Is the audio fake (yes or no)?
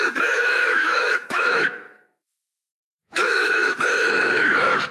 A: yes